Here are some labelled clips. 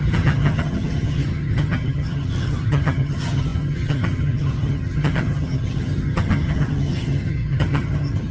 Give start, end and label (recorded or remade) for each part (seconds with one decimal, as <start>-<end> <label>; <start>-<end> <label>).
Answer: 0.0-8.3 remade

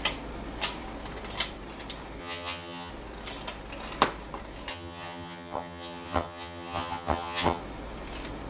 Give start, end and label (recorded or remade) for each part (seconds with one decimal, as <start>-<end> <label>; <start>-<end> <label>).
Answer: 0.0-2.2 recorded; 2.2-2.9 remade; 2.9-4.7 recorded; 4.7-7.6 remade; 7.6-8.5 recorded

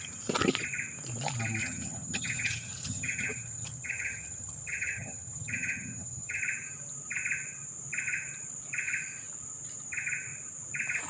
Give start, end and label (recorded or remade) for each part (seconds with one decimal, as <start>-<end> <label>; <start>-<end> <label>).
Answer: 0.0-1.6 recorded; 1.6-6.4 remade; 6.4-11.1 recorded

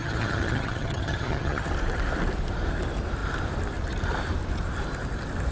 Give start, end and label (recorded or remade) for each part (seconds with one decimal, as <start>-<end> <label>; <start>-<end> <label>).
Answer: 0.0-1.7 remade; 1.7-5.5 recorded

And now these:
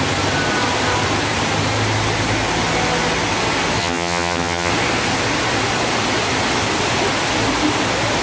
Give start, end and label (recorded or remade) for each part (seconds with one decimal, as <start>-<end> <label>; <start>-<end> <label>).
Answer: 0.0-3.8 recorded; 3.8-4.7 remade; 4.7-8.2 recorded

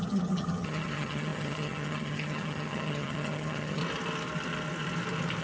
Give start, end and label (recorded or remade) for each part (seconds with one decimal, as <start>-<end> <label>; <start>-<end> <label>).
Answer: 0.0-3.8 remade; 3.8-5.4 recorded